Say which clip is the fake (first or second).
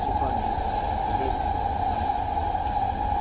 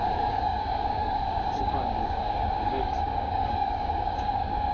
second